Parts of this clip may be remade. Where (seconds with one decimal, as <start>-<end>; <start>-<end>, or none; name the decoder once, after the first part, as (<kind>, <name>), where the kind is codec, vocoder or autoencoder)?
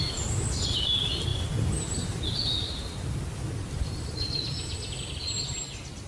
none